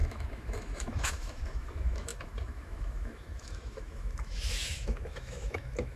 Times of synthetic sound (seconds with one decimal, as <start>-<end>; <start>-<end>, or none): 0.0-6.0